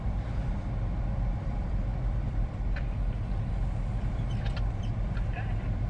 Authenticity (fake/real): fake